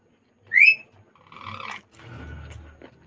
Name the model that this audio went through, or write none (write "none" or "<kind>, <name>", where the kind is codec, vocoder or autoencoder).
none